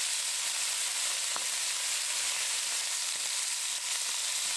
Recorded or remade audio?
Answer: recorded